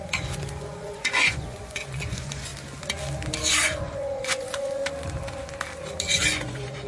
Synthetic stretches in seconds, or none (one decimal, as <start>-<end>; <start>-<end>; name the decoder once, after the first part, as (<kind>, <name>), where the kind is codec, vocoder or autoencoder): 0.0-2.5 (vocoder, Vocos); 3.5-4.8; 6.1-6.9